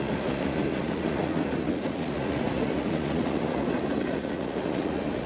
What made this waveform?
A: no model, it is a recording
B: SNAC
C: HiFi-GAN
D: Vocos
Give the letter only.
D